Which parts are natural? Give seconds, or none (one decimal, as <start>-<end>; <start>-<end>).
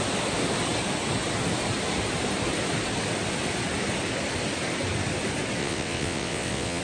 0.0-5.6